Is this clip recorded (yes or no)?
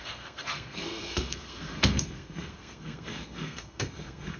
no